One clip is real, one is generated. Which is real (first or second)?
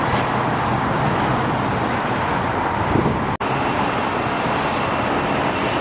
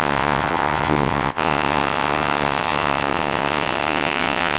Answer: first